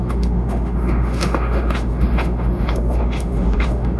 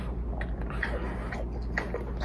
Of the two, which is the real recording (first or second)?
second